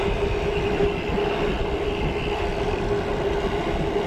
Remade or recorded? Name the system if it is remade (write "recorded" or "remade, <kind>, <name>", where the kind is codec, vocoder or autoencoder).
recorded